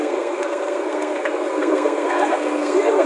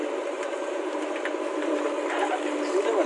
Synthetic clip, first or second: first